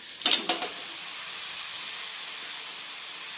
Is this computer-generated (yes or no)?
no